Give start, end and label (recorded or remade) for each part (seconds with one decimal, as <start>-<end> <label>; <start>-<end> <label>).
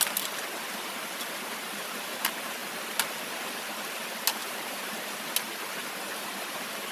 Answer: 0.0-4.4 recorded; 4.4-5.0 remade; 5.0-6.9 recorded